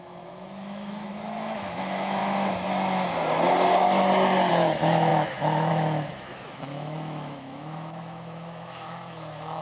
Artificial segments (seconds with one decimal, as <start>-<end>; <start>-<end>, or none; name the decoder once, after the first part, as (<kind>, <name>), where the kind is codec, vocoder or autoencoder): 0.0-2.2 (autoencoder, DAC-VAE); 4.5-9.6